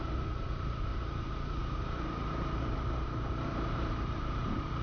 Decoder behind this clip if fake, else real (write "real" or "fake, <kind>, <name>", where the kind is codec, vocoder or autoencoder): fake, vocoder, BigVGAN v2